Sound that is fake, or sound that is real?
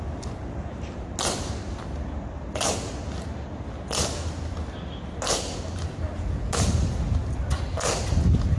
real